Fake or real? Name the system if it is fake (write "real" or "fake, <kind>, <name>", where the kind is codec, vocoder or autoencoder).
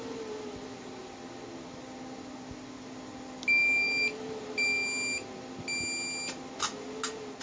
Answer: real